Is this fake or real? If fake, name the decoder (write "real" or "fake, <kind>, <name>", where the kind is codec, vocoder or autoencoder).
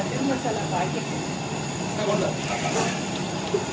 fake, vocoder, BigVGAN v2